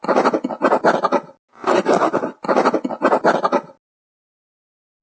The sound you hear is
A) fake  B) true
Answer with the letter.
B